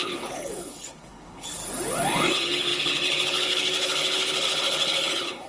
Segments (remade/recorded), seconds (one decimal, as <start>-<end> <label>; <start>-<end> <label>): 0.0-1.6 remade; 1.6-2.3 recorded; 2.3-5.5 remade